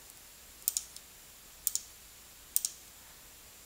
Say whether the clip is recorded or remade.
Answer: recorded